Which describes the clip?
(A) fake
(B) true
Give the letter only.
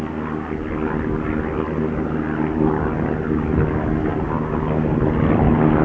B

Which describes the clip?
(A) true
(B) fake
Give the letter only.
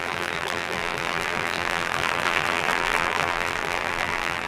B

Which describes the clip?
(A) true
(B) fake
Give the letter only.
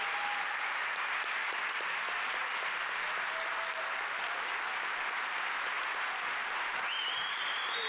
A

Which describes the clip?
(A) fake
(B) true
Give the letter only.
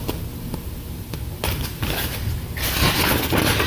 B